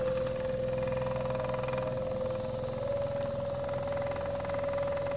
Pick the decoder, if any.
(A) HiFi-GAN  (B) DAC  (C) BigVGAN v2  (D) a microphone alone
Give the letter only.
D